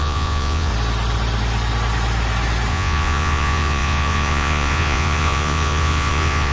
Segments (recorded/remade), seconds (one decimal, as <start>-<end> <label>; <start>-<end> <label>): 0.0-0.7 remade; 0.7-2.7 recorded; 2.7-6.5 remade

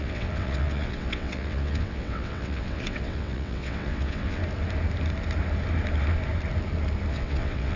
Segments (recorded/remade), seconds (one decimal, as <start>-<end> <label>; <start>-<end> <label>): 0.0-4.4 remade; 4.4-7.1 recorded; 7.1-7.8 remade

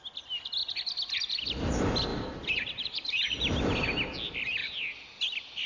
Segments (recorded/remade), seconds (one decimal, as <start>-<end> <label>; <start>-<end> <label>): 0.0-2.1 recorded; 2.1-3.6 remade; 3.6-4.6 recorded; 4.6-5.2 remade; 5.2-5.7 recorded

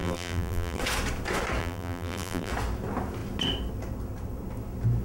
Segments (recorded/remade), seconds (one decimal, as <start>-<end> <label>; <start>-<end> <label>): 0.0-0.8 remade; 0.8-1.6 recorded; 1.6-2.5 remade; 2.5-5.0 recorded

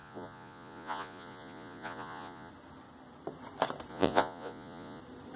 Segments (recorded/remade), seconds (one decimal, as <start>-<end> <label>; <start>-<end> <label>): 0.0-2.5 remade; 2.5-3.9 recorded; 3.9-5.0 remade; 5.0-5.4 recorded